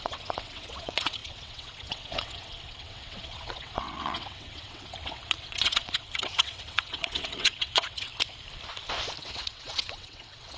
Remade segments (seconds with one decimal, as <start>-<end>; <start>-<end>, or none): 0.0-8.1; 9.2-10.6